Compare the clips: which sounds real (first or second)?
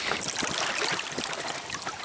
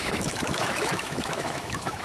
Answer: first